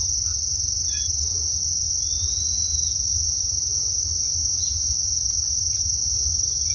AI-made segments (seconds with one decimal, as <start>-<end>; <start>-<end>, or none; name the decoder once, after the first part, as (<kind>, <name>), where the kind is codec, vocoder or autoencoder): none